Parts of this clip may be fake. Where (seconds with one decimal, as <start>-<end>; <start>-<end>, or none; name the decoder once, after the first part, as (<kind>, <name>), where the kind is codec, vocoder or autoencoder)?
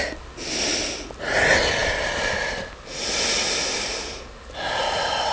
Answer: 1.8-2.9 (vocoder, BigVGAN v2)